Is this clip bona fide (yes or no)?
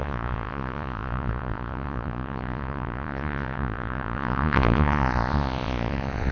no